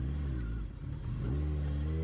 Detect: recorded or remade recorded